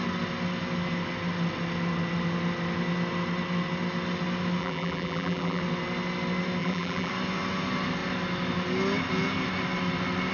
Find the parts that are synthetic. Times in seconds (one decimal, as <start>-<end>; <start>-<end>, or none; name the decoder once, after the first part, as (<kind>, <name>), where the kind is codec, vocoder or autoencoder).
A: 4.6-5.6 (vocoder, BigVGAN v2); 6.6-7.1